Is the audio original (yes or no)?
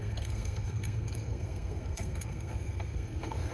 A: no